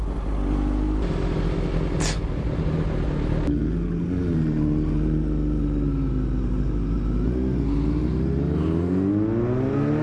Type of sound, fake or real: real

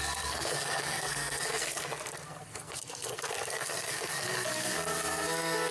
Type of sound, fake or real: fake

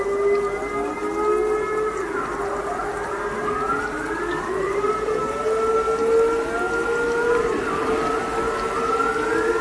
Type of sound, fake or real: real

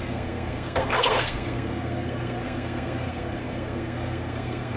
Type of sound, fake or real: fake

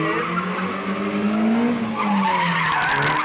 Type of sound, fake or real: real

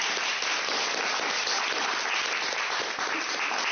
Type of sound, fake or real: real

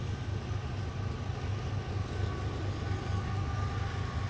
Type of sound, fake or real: real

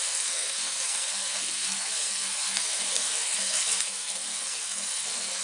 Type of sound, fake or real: fake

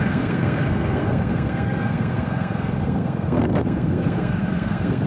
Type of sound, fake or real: fake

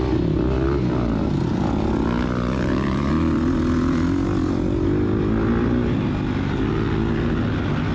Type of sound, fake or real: real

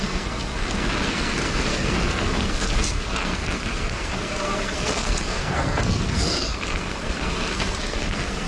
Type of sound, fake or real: fake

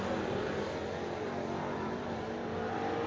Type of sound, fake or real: real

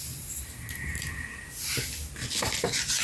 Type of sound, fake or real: real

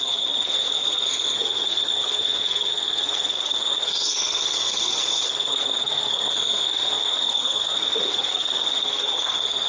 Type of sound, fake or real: fake